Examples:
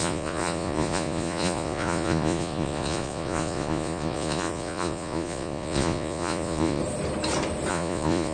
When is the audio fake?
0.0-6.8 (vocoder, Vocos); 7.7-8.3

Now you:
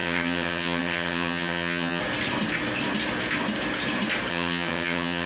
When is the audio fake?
0.0-2.0 (vocoder, HiFi-GAN); 4.3-5.3

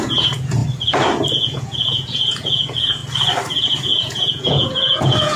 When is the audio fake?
0.0-0.6 (vocoder, Vocos); 1.3-3.0; 3.8-5.4

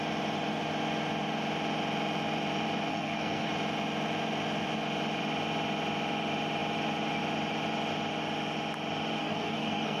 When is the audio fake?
2.9-3.5 (codec, SNAC); 9.2-10.0

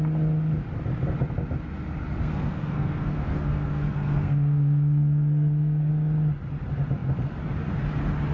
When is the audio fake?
2.2-5.9 (codec, SNAC)

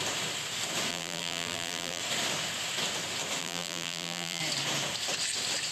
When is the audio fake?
0.9-2.0 (vocoder, BigVGAN v2); 3.4-4.4

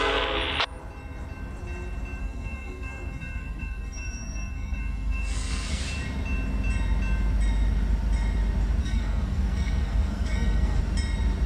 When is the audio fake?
2.2-5.8 (codec, SNAC); 8.8-10.8

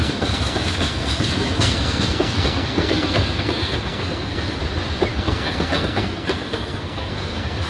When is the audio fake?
0.0-4.6 (codec, SNAC); 5.1-7.7